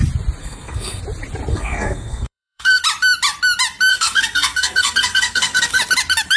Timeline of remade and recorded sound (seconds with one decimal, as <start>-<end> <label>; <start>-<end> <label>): 0.0-0.4 recorded; 0.4-1.0 remade; 1.0-1.5 recorded; 1.5-2.8 remade; 2.8-3.9 recorded; 3.9-5.8 remade; 5.8-6.4 recorded